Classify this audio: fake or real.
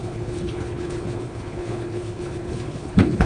fake